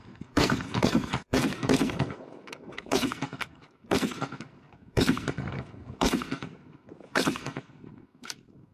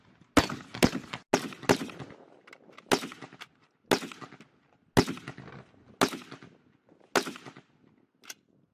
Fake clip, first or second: first